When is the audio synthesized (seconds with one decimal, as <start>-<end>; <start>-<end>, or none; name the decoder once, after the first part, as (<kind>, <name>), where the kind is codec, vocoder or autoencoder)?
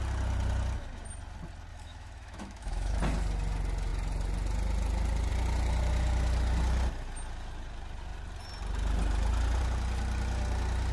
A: 1.7-3.0 (autoencoder, DAC-VAE)